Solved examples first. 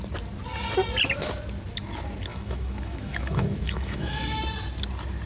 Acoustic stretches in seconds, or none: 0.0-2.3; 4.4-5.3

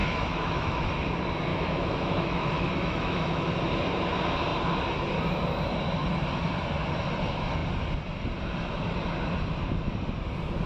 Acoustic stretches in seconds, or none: 0.9-1.5; 3.5-10.7

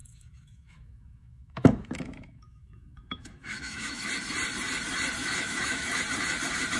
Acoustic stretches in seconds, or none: 4.1-5.2; 6.0-6.8

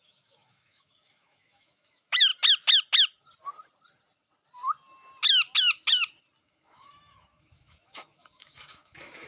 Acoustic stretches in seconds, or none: 2.3-6.4

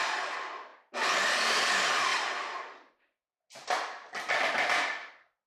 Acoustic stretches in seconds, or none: 0.0-5.5

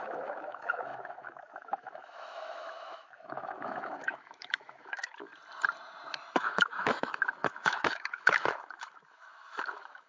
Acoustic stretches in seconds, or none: 5.3-6.2